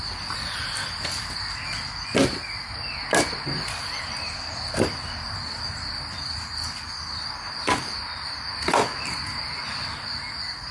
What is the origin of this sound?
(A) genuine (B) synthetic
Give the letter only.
A